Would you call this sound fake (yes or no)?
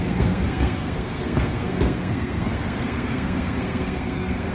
yes